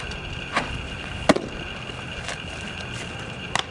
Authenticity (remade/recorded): recorded